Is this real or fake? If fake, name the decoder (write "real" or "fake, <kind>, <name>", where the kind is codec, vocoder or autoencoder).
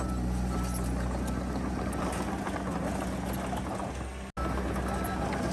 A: real